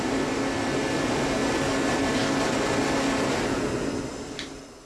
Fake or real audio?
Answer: real